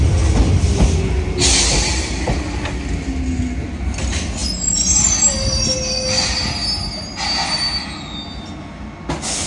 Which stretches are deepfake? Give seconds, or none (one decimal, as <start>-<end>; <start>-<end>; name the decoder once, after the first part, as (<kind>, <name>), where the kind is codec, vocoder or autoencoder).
none